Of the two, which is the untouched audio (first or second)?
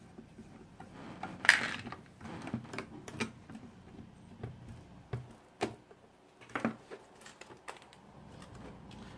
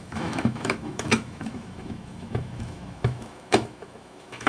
first